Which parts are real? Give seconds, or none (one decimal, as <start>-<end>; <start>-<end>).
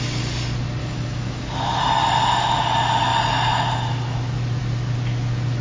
0.0-0.8; 1.8-5.6